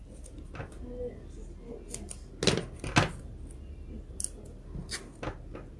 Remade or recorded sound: recorded